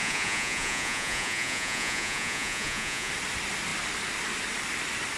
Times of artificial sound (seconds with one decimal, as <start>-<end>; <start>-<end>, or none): 0.0-3.1